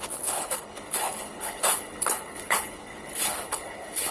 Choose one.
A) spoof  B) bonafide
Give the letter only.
A